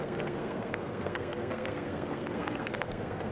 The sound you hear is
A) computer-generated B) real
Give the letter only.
A